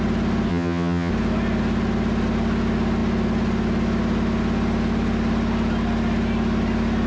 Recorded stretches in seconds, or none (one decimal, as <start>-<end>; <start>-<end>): 0.0-0.5; 1.1-7.1